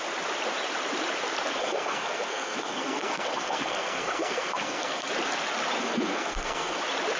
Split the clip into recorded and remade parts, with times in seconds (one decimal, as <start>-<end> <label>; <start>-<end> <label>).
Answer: 0.0-1.6 recorded; 1.6-5.1 remade; 5.1-5.8 recorded; 5.8-6.8 remade; 6.8-7.2 recorded